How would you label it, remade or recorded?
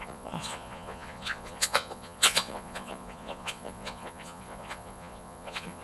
remade